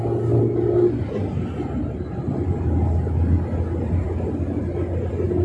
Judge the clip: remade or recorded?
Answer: recorded